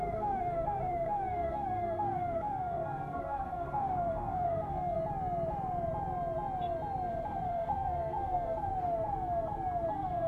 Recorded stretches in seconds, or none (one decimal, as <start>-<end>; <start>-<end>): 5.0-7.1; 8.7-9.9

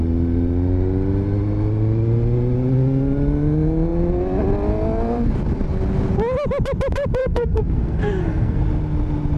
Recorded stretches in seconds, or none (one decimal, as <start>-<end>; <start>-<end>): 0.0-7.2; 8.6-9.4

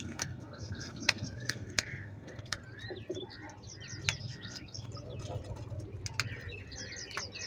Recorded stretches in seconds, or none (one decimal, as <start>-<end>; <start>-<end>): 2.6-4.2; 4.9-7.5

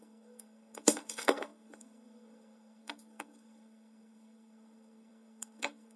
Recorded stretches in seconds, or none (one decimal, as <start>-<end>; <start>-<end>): none

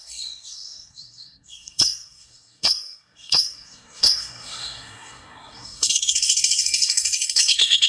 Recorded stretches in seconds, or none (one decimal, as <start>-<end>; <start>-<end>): none

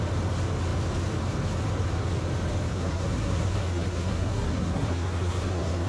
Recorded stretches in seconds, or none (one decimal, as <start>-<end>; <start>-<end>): 0.0-2.7